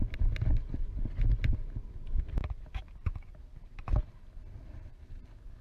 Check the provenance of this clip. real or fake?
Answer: real